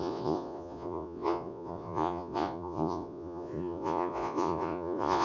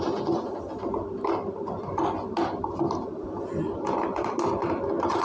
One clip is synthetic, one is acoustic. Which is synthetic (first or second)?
first